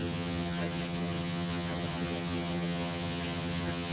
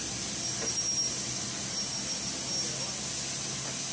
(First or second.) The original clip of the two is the second